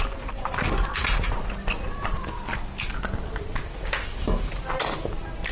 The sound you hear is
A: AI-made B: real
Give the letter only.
B